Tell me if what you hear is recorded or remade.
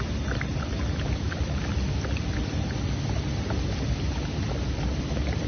recorded